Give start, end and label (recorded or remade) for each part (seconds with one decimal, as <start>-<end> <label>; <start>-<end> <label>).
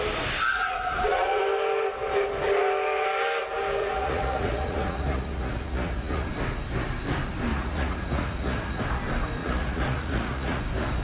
0.0-0.5 recorded; 0.5-1.4 remade; 1.4-3.8 recorded; 3.8-6.3 remade; 6.3-7.5 recorded; 7.5-8.8 remade; 8.8-9.4 recorded; 9.4-10.6 remade; 10.6-11.0 recorded